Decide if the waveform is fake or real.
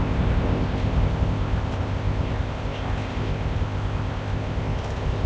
fake